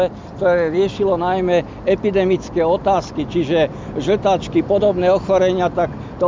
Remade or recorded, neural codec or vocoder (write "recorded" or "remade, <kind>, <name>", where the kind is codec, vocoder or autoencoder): recorded